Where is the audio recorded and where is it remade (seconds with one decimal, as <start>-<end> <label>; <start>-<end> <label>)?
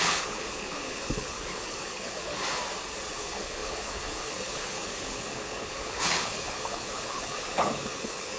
0.0-2.4 remade; 2.4-3.1 recorded; 3.1-8.4 remade